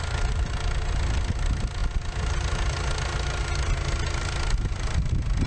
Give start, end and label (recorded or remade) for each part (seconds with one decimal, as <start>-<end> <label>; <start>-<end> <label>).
0.0-5.5 recorded